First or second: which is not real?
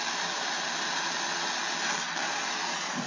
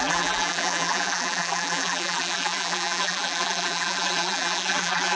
second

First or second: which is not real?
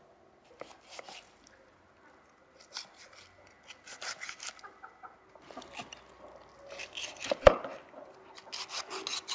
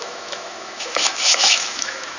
second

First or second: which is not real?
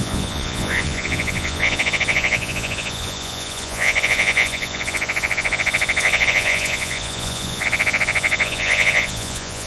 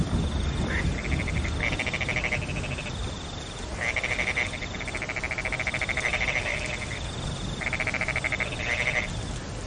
first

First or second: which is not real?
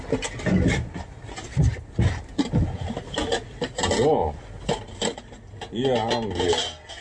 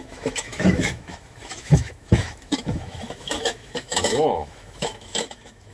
second